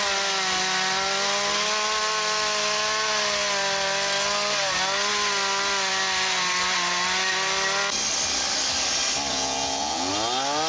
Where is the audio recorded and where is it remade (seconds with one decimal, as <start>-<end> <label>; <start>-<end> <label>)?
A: 0.0-9.3 recorded; 9.3-10.1 remade; 10.1-10.7 recorded